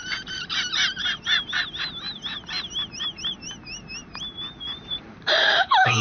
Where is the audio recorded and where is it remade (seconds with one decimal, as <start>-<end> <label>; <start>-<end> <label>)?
0.0-1.0 remade; 1.0-4.6 recorded; 4.6-6.0 remade